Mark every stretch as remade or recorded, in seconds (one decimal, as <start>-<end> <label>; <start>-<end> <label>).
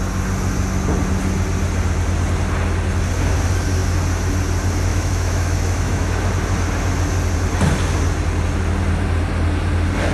0.0-4.9 recorded; 4.9-6.1 remade; 6.1-10.1 recorded